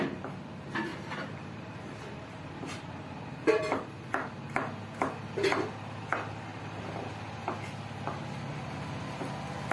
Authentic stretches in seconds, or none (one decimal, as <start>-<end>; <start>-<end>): 0.0-0.9; 3.6-6.5; 7.1-8.5; 9.2-9.7